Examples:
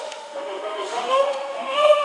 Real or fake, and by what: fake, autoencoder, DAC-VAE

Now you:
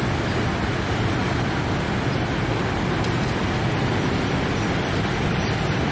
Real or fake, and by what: real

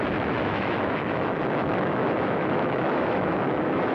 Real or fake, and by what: fake, autoencoder, DAC-VAE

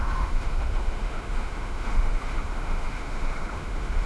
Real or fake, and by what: fake, autoencoder, DAC-VAE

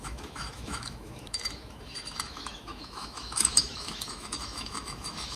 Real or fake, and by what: fake, autoencoder, DAC-VAE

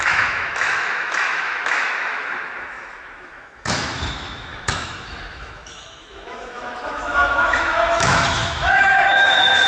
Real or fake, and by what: fake, autoencoder, DAC-VAE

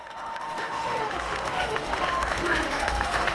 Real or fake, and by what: fake, autoencoder, DAC-VAE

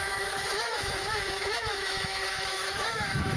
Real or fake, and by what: fake, autoencoder, DAC-VAE